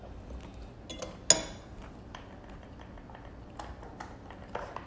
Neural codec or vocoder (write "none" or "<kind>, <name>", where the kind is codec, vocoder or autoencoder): none